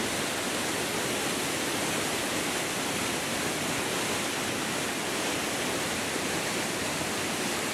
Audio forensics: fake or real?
real